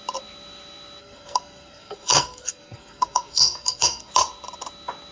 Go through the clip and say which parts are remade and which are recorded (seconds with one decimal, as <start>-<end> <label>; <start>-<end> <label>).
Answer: 0.0-1.0 recorded; 1.0-4.1 remade; 4.1-5.1 recorded

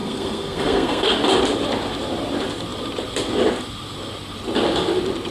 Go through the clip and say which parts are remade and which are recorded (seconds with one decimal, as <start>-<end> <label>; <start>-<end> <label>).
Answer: 0.0-1.1 remade; 1.1-5.3 recorded

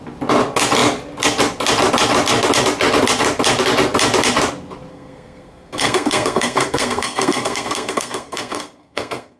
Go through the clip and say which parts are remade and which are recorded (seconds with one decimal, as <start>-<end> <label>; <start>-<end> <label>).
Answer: 0.0-4.9 recorded; 4.9-9.4 remade

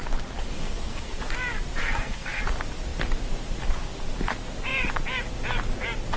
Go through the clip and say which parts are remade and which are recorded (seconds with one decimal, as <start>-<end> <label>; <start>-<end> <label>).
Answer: 0.0-0.5 recorded; 0.5-1.2 remade; 1.2-1.8 recorded; 1.8-2.4 remade; 2.4-6.2 recorded